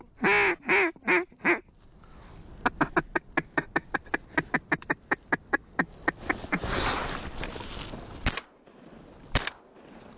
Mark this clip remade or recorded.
recorded